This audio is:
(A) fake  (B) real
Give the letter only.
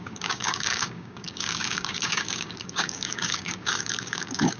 A